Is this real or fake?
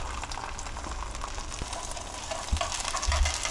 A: real